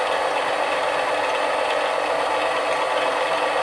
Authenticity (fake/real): real